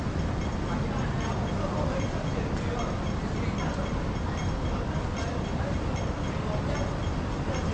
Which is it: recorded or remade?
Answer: recorded